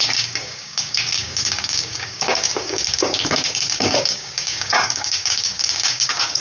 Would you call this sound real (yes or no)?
no